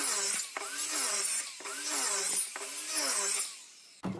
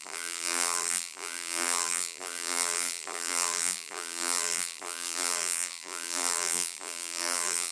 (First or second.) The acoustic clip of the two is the first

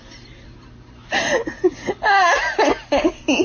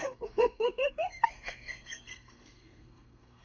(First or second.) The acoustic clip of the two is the first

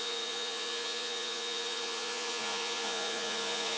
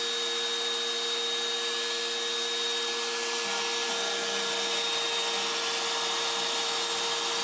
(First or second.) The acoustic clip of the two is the second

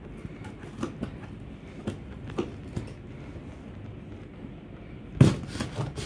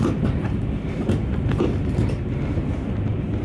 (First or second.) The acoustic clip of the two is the first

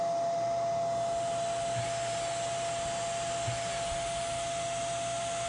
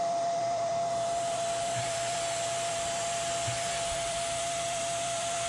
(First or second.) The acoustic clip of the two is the first